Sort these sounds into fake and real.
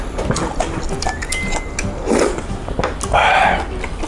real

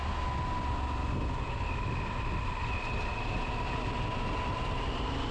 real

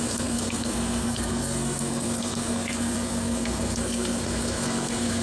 fake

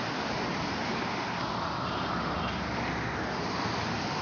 real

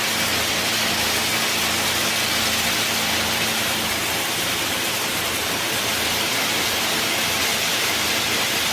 real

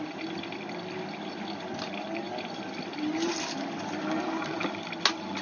real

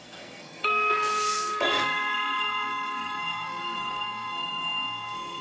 fake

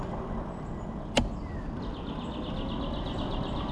real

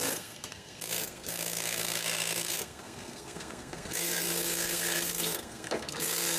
fake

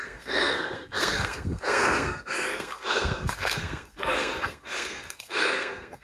fake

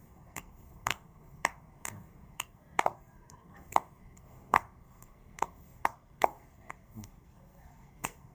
fake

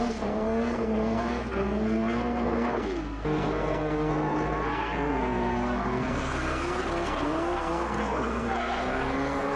fake